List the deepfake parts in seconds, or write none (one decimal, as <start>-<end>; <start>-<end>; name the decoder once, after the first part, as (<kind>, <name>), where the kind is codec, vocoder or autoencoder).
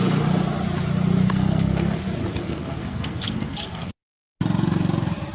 1.2-2.0 (codec, SNAC); 2.4-3.9